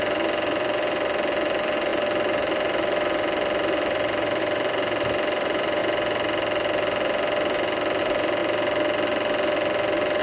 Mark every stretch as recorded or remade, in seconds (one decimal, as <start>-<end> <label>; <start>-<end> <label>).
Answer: 0.0-5.8 remade; 5.8-8.0 recorded; 8.0-8.4 remade; 8.4-10.2 recorded